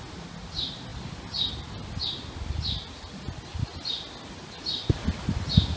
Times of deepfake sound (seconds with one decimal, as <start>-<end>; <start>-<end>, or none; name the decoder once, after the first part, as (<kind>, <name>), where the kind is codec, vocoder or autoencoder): none